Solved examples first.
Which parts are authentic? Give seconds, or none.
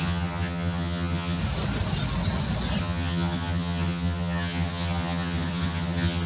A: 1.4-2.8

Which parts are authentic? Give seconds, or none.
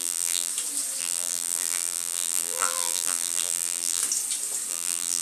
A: 0.5-1.0; 4.0-4.7